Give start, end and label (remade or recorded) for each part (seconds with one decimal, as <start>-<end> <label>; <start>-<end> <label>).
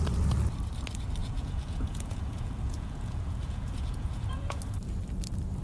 0.0-1.2 recorded; 1.2-4.6 remade; 4.6-5.6 recorded